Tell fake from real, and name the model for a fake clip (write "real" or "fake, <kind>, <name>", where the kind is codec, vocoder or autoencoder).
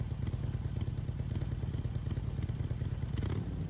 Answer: real